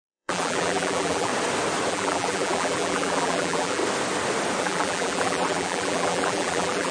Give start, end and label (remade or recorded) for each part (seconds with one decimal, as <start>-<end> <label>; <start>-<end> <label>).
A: 0.0-1.3 remade; 1.3-1.9 recorded; 1.9-3.8 remade; 3.8-4.6 recorded; 4.6-6.9 remade